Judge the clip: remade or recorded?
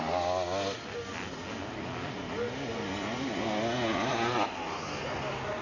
recorded